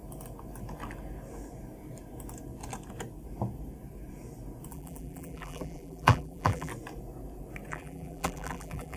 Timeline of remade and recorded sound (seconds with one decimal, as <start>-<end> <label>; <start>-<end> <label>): 0.0-4.7 recorded; 4.7-6.7 remade; 6.7-7.7 recorded; 7.7-9.0 remade